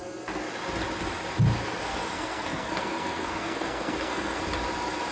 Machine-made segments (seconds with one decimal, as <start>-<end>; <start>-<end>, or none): 1.9-4.4

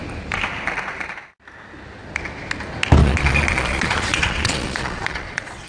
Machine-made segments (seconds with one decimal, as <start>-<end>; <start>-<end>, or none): 3.0-5.7

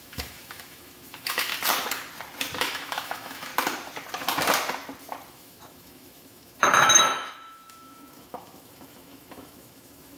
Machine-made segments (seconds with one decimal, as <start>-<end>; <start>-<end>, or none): 0.0-1.5; 2.6-3.5; 5.3-10.2

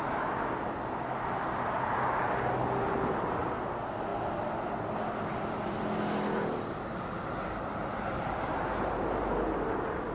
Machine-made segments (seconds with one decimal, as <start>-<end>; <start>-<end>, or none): 4.1-9.0

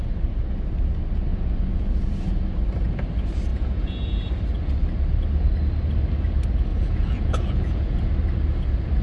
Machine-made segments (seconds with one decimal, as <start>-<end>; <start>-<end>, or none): 1.3-1.9; 3.5-4.2; 6.7-8.1

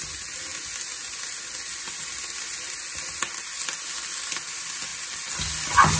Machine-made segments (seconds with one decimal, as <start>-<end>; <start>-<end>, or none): none